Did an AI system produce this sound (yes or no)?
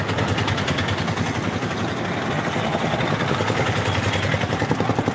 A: no